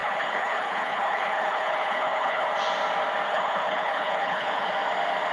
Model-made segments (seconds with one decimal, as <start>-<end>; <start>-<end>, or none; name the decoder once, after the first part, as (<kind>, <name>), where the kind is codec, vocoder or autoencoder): 0.0-2.5 (codec, HILCodec); 3.3-4.7